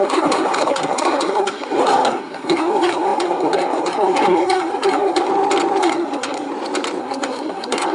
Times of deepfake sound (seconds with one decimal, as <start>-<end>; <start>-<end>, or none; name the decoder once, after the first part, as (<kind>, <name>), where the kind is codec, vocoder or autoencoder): 0.0-5.3 (codec, SNAC); 5.8-6.5; 7.0-7.9